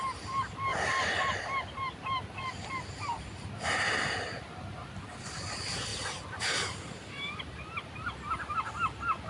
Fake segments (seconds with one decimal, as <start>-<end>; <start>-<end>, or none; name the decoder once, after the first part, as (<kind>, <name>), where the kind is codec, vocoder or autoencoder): 0.7-1.3 (vocoder, BigVGAN v2); 5.9-7.4

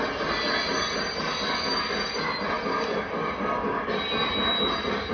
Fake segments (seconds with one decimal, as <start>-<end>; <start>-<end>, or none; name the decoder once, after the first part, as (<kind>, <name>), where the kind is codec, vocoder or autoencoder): 3.2-3.9 (codec, DAC)

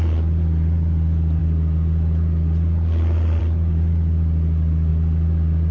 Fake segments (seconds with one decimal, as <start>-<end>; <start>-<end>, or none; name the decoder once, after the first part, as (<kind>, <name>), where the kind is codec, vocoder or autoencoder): none

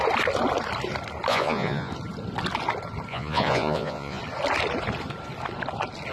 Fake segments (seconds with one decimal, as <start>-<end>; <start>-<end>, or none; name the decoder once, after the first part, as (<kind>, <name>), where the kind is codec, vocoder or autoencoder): 1.3-1.9 (vocoder, Vocos); 3.1-4.2

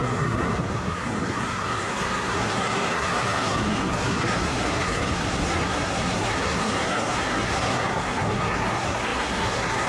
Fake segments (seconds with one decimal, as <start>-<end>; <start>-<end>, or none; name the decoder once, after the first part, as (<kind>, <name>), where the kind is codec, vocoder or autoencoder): 0.0-9.9 (codec, SNAC)

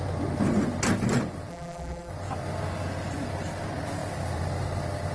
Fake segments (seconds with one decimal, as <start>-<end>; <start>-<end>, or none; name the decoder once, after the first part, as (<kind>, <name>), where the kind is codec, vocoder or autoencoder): 1.5-2.1 (vocoder, BigVGAN v2)

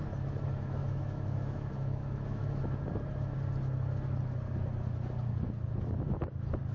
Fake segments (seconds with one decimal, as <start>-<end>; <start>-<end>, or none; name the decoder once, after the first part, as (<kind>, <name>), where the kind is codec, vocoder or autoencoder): 0.8-2.6 (autoencoder, DAC-VAE)

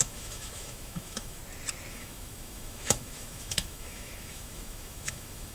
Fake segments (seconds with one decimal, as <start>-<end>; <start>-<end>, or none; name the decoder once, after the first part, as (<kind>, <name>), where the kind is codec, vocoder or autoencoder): 0.0-1.4 (autoencoder, DAC-VAE); 1.9-5.5